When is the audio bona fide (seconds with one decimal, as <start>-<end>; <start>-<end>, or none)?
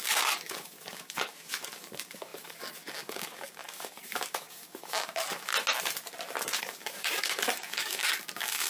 5.5-6.6